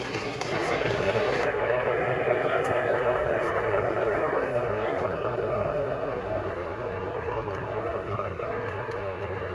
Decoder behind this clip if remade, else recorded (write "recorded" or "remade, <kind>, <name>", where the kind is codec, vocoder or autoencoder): remade, codec, SNAC